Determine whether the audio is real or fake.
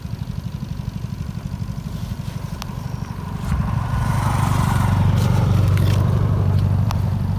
fake